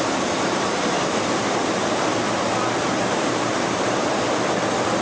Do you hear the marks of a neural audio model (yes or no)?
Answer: yes